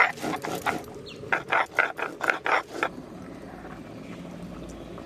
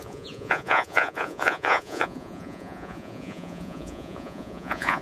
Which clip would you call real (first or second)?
first